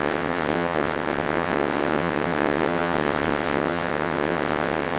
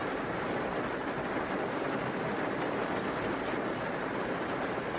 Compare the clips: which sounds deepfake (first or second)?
first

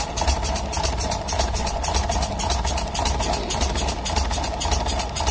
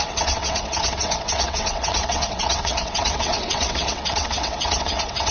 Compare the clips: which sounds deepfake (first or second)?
second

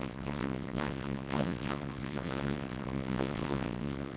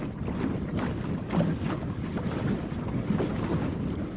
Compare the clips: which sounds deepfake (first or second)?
first